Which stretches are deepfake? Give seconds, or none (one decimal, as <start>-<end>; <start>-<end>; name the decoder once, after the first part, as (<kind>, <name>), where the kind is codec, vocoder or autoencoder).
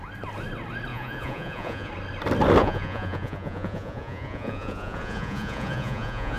0.9-1.9 (vocoder, Vocos); 2.6-6.4